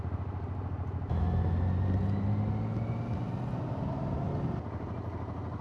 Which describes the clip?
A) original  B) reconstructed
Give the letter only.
A